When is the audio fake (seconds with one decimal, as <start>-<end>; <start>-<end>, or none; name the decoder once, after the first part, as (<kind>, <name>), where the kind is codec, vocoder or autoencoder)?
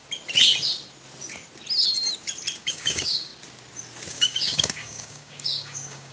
2.6-3.3 (codec, DAC); 4.1-6.1